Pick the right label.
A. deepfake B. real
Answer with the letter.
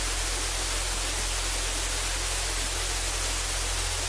B